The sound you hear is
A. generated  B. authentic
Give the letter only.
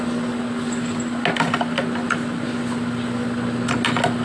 B